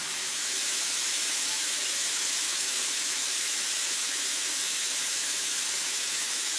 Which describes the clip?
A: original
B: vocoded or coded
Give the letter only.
B